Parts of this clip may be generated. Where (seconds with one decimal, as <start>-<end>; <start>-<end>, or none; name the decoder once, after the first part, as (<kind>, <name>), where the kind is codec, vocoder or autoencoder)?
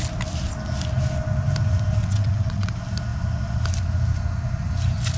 2.0-2.7 (vocoder, WaveNeXt)